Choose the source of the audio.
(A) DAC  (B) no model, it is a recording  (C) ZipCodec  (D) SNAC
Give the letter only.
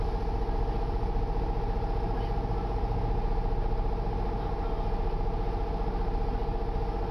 B